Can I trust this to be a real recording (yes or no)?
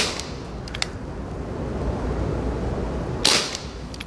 yes